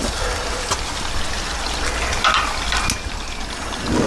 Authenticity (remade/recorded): recorded